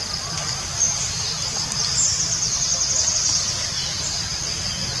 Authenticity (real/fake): real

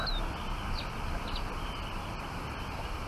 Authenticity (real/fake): real